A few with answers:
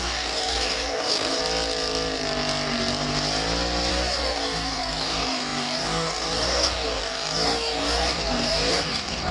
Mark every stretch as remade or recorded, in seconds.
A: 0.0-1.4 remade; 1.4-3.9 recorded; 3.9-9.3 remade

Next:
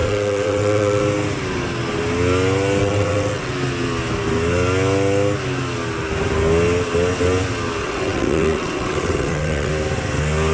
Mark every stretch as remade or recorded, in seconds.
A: 0.0-1.0 remade; 1.0-2.8 recorded; 2.8-3.5 remade; 3.5-7.8 recorded; 7.8-9.7 remade; 9.7-10.5 recorded

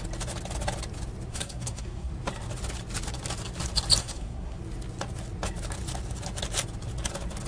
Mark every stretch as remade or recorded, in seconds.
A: 0.0-1.3 recorded; 1.3-2.1 remade; 2.1-4.0 recorded; 4.0-4.6 remade; 4.6-7.5 recorded

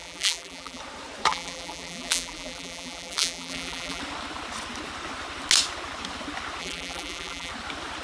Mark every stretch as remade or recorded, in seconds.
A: 0.0-0.8 remade; 0.8-1.3 recorded; 1.3-4.0 remade; 4.0-6.6 recorded; 6.6-7.5 remade; 7.5-8.0 recorded

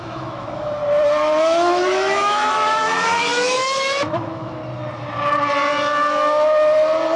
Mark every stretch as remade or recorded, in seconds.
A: 0.0-0.8 remade; 0.8-1.4 recorded; 1.4-4.6 remade; 4.6-7.2 recorded

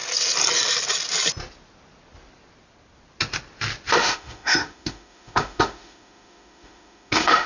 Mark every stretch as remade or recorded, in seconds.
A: 0.0-3.9 recorded; 3.9-7.5 remade

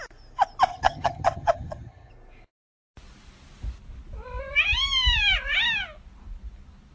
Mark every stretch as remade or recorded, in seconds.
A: 0.0-0.7 recorded; 0.7-2.1 remade; 2.1-6.9 recorded